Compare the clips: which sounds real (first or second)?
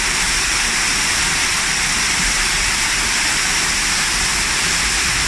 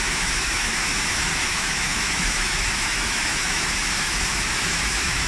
first